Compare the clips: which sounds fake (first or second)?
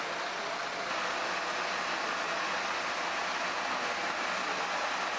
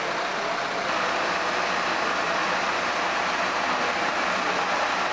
second